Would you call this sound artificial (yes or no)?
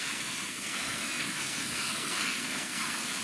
yes